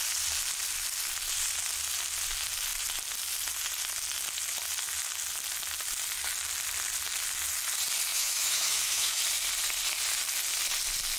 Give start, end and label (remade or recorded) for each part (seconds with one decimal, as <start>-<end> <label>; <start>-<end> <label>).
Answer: 0.0-8.1 recorded; 8.1-9.2 remade; 9.2-11.2 recorded